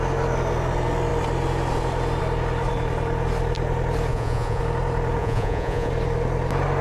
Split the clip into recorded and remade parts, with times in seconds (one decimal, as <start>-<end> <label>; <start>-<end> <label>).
0.0-4.1 recorded; 4.1-4.6 remade; 4.6-5.2 recorded; 5.2-5.9 remade; 5.9-6.8 recorded